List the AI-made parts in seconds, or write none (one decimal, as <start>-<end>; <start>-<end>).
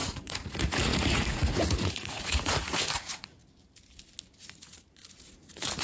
0.0-3.4; 4.4-5.8